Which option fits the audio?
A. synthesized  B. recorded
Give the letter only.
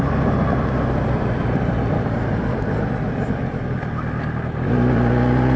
B